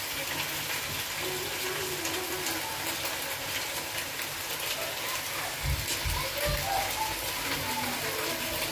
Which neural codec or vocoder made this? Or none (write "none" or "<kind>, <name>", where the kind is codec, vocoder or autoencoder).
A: none